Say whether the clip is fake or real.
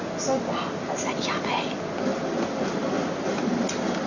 real